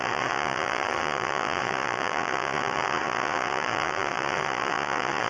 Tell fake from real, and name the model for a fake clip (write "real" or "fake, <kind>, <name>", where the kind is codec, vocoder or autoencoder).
fake, vocoder, Vocos